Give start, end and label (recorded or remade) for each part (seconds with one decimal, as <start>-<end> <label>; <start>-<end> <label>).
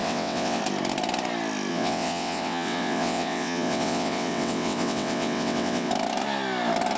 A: 0.0-0.6 remade; 0.6-1.7 recorded; 1.7-5.9 remade; 5.9-7.0 recorded